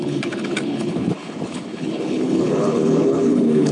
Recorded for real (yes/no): no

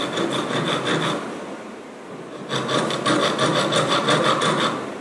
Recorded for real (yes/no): yes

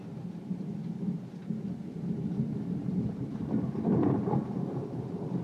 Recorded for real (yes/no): no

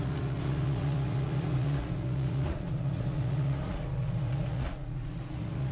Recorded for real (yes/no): no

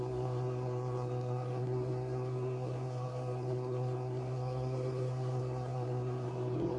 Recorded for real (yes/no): no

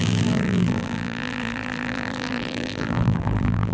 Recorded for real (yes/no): no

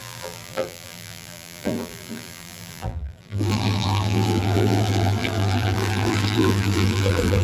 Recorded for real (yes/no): no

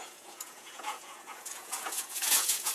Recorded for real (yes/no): no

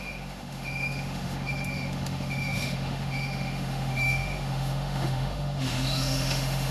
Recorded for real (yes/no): no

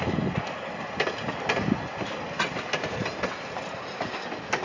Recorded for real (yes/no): yes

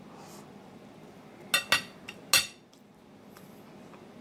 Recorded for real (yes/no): yes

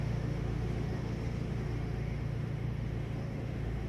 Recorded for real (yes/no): no